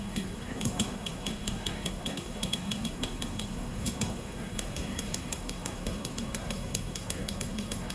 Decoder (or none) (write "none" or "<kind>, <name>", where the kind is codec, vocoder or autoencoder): codec, SNAC